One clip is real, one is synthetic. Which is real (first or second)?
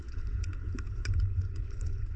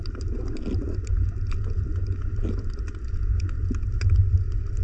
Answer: second